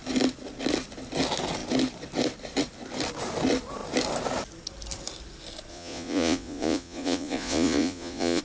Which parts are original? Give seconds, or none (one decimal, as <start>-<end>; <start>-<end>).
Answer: 0.0-5.7